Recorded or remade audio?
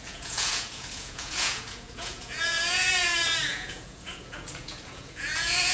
remade